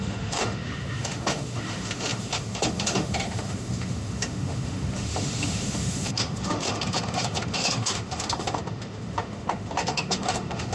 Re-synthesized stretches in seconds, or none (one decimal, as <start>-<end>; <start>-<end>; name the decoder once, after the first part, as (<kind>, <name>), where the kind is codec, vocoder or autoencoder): 0.0-10.7 (autoencoder, DAC-VAE)